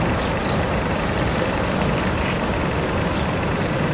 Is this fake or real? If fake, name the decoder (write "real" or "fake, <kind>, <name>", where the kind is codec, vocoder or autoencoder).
fake, vocoder, BigVGAN v2